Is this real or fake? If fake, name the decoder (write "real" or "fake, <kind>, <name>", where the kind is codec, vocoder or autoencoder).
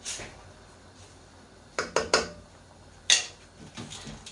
real